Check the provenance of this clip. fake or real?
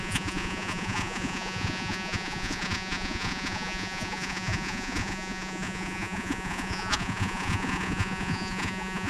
fake